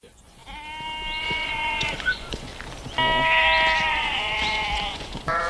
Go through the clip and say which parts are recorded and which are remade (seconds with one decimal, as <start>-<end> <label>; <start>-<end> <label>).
0.0-0.4 remade; 0.4-1.2 recorded; 1.2-2.5 remade; 2.5-3.9 recorded; 3.9-5.5 remade